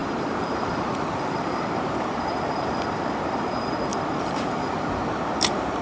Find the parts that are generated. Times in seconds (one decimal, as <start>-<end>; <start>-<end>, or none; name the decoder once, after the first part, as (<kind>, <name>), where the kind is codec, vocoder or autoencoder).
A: 0.0-3.4 (vocoder, BigVGAN v2); 3.9-5.8